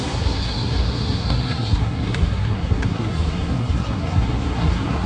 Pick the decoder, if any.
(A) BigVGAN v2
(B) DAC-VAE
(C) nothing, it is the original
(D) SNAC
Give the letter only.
D